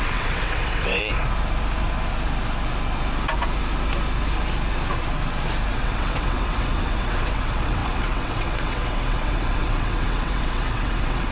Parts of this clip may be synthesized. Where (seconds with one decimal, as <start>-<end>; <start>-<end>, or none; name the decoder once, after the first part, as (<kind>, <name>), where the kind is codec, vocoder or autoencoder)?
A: 0.0-1.0 (vocoder, WaveNeXt); 5.7-11.3